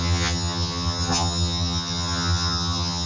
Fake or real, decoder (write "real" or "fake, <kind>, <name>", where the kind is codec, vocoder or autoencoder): fake, vocoder, HiFi-GAN